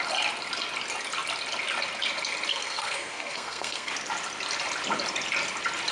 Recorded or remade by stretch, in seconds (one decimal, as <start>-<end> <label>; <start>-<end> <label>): 0.0-2.5 recorded; 2.5-3.9 remade; 3.9-5.9 recorded